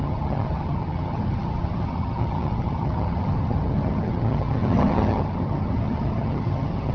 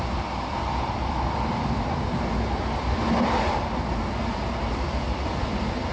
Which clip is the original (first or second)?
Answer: second